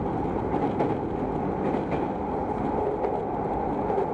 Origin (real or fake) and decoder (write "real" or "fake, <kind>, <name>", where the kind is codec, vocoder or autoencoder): real